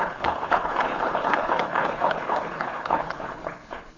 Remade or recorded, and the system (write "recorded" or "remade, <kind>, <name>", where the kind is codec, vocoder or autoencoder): remade, codec, HILCodec